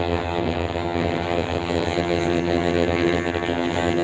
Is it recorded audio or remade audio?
remade